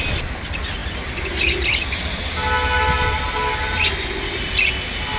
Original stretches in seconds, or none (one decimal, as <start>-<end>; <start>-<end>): 0.0-5.2